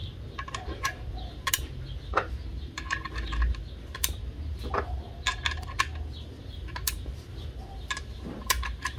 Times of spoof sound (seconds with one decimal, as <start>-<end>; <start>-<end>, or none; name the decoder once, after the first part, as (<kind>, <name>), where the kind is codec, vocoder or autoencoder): 0.0-5.3 (vocoder, BigVGAN v2); 6.4-9.0